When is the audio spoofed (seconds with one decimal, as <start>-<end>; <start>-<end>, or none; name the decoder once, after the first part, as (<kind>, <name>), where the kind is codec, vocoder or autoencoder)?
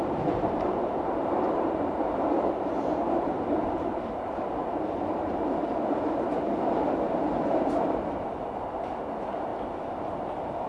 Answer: 0.0-9.5 (vocoder, BigVGAN v2); 10.1-10.7